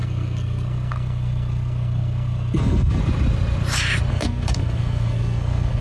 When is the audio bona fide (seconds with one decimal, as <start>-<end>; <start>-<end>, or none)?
3.0-4.1